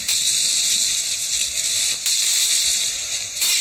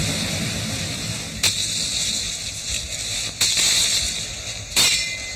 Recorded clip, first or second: second